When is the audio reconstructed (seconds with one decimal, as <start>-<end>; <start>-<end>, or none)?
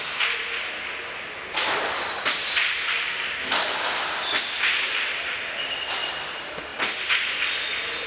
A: none